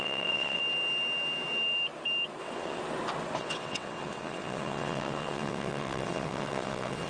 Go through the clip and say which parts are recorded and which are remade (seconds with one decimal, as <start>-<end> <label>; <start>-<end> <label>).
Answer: 0.0-0.6 remade; 0.6-2.4 recorded; 2.4-2.8 remade; 2.8-3.4 recorded; 3.4-7.1 remade